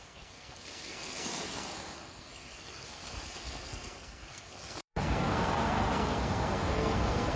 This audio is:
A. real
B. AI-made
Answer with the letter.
B